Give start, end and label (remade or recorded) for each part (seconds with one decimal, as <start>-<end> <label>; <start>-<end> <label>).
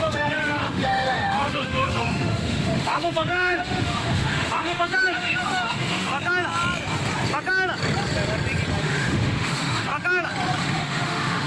0.0-6.1 remade; 6.1-8.8 recorded; 8.8-9.9 remade; 9.9-10.6 recorded; 10.6-11.5 remade